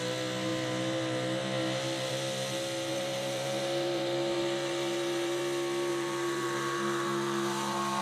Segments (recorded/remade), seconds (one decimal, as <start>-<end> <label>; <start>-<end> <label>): 0.0-2.9 recorded; 2.9-5.4 remade; 5.4-5.9 recorded; 5.9-8.0 remade